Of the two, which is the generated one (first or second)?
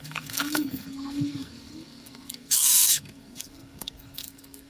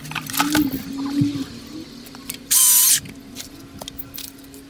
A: first